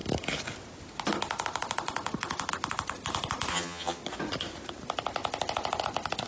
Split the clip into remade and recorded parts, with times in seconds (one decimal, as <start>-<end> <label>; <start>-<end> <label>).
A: 0.0-3.5 recorded; 3.5-4.0 remade; 4.0-6.3 recorded